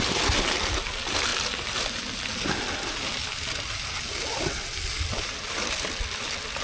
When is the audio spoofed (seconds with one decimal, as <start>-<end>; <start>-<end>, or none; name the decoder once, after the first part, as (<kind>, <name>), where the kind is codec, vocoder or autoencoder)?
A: none